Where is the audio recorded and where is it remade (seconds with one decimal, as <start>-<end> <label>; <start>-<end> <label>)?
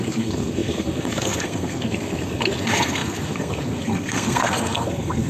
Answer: 0.0-5.3 remade